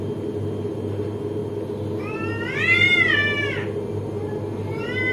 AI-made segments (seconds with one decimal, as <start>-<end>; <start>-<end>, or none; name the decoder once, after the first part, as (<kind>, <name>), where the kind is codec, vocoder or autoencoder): none